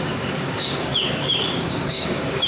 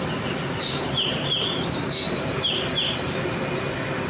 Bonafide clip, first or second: second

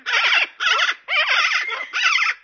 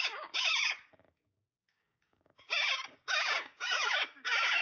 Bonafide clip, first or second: first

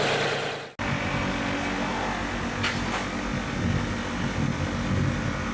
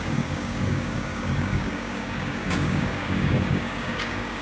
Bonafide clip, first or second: first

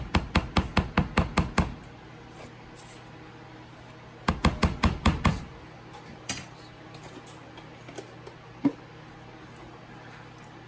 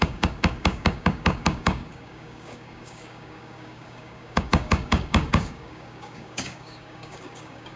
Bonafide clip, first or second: first